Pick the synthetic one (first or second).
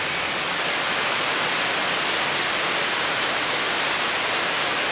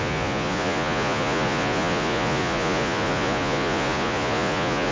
second